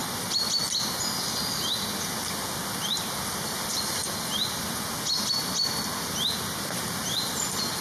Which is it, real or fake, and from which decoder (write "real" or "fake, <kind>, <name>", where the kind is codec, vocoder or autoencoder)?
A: real